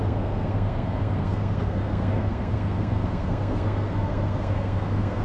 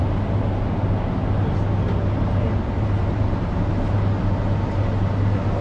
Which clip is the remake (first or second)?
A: first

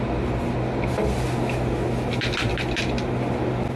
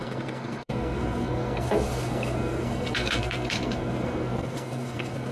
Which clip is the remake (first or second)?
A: second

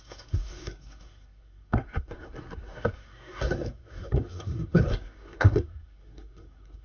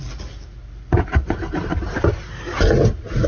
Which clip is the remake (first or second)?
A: first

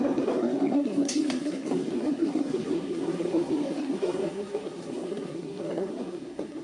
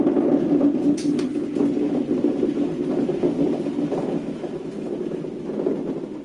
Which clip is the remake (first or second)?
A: first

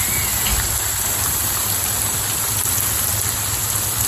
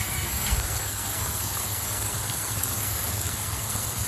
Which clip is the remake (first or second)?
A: second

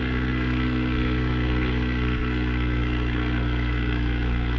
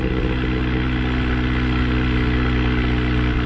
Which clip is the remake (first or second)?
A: first